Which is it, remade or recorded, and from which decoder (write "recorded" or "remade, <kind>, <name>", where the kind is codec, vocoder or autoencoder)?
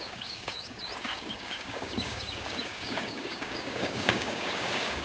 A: remade, codec, DAC